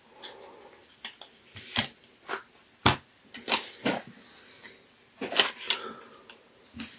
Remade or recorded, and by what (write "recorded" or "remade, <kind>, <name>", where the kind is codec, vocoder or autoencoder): recorded